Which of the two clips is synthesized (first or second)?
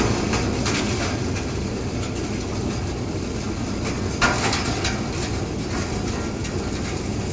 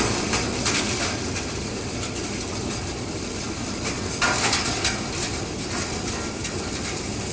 second